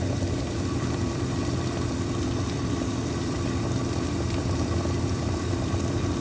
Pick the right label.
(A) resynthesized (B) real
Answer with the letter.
A